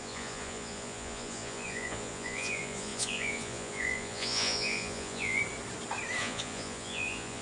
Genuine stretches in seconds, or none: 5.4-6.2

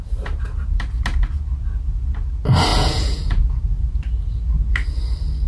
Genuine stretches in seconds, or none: 0.0-2.7; 4.0-5.5